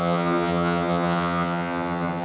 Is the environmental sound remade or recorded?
remade